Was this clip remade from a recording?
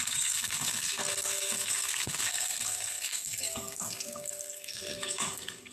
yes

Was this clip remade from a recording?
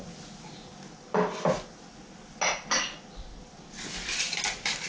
no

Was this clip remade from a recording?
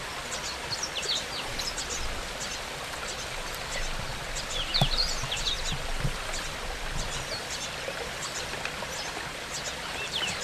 no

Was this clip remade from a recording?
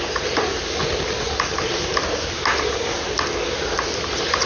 yes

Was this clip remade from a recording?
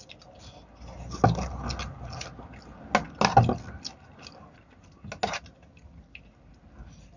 no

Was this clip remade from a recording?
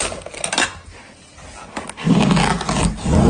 no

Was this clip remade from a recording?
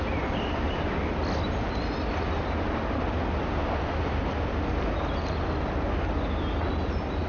no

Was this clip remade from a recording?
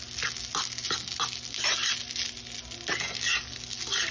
no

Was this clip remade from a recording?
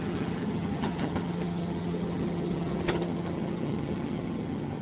yes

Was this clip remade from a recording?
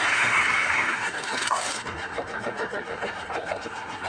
yes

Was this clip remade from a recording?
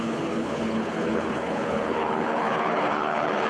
yes